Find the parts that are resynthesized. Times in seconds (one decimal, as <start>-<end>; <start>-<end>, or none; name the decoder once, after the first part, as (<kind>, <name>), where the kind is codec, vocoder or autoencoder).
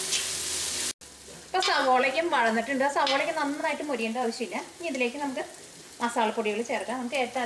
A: 1.8-2.6 (vocoder, BigVGAN v2); 3.6-5.4